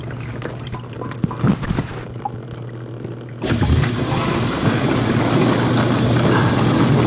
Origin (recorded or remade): recorded